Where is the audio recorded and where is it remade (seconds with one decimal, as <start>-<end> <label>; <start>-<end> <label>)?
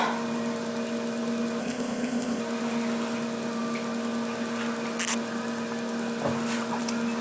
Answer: 0.0-1.6 recorded; 1.6-2.4 remade; 2.4-7.2 recorded